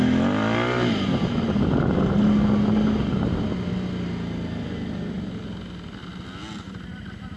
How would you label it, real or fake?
real